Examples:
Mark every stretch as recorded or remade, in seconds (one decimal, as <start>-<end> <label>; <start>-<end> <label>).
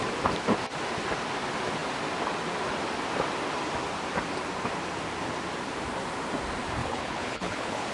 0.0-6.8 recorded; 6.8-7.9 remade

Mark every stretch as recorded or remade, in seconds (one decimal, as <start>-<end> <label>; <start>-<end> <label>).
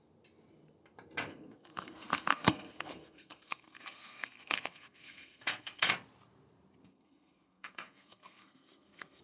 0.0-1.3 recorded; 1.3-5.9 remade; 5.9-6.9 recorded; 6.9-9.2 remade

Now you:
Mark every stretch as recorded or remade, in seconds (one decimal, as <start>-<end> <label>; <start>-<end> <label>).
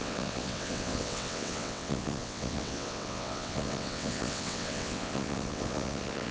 0.0-6.3 remade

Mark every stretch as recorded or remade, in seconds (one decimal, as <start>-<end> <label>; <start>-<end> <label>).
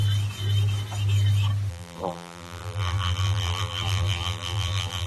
0.0-1.7 recorded; 1.7-5.1 remade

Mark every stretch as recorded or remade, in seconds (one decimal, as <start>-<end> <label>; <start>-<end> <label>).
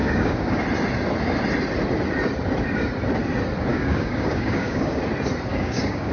0.0-0.6 remade; 0.6-3.7 recorded; 3.7-5.0 remade; 5.0-5.5 recorded; 5.5-6.1 remade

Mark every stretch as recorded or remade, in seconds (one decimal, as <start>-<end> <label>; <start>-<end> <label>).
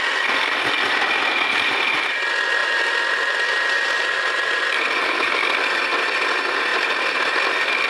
0.0-2.6 recorded; 2.6-5.4 remade; 5.4-6.7 recorded; 6.7-7.3 remade; 7.3-7.9 recorded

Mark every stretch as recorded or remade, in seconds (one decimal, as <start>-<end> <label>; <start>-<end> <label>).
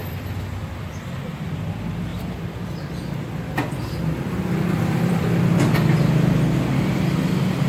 0.0-0.9 remade; 0.9-2.1 recorded; 2.1-5.3 remade; 5.3-7.7 recorded